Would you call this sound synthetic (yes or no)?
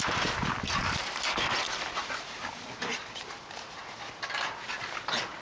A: no